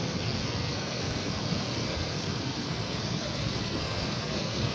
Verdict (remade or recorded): remade